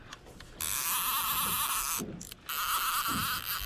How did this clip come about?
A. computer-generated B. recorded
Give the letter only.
B